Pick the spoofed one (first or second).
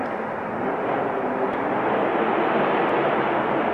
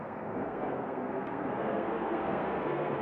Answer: second